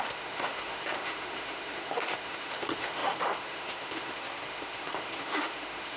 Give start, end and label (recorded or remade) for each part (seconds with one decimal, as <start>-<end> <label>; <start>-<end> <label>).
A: 0.0-6.0 remade